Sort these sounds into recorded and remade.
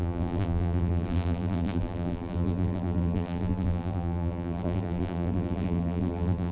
remade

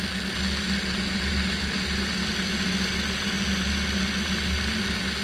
recorded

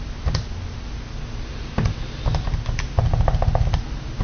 recorded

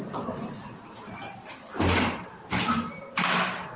remade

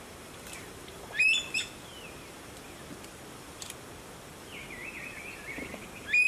remade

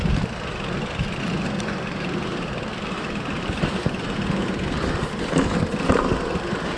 remade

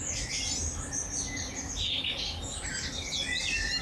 recorded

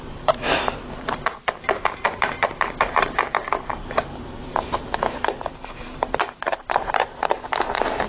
remade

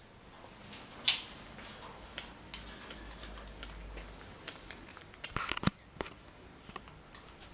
recorded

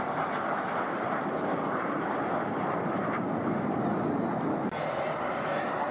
recorded